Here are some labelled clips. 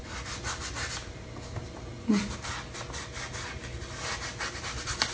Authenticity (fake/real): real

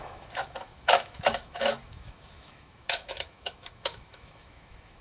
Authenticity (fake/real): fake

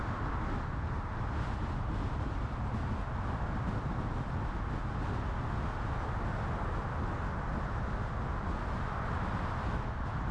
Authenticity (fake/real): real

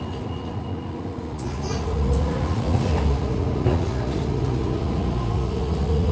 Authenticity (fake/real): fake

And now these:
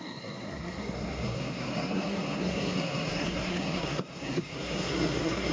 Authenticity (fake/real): fake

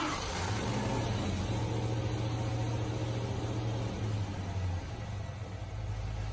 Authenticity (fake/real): real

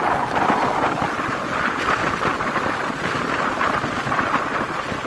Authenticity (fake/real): real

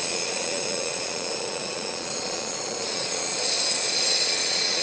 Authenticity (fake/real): fake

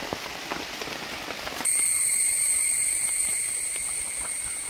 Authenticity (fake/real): fake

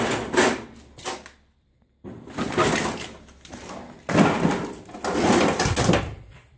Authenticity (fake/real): real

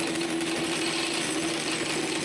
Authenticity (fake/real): real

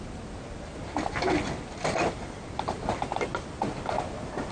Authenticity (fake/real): real